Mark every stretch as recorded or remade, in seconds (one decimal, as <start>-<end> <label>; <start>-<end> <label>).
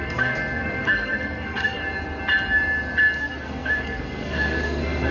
0.0-1.8 remade; 1.8-3.2 recorded; 3.2-5.1 remade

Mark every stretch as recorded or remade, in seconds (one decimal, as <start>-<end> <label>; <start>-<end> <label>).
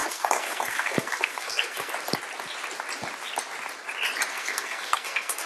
0.0-1.9 remade; 1.9-4.3 recorded; 4.3-5.5 remade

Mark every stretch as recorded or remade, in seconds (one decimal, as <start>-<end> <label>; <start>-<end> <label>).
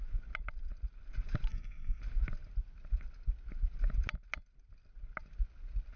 0.0-1.5 recorded; 1.5-2.0 remade; 2.0-6.0 recorded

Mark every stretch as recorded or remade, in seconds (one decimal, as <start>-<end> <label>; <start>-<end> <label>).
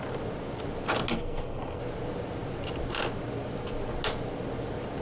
0.0-1.1 recorded; 1.1-1.8 remade; 1.8-5.0 recorded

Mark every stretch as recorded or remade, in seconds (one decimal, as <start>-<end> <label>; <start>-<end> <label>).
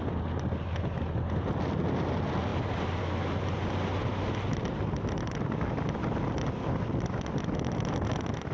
0.0-8.5 recorded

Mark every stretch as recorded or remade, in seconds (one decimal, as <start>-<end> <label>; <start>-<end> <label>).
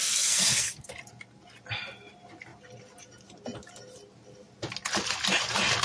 0.0-0.9 remade; 0.9-5.8 recorded